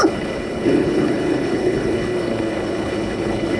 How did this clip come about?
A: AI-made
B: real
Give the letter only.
A